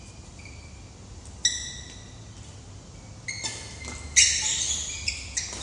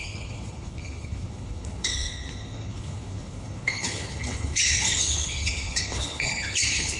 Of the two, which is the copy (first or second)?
second